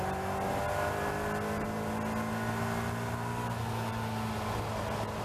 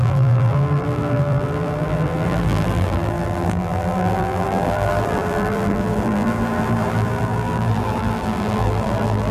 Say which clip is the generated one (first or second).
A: second